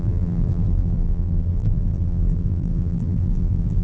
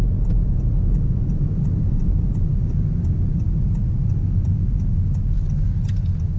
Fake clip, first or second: first